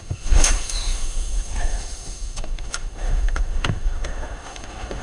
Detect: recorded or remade remade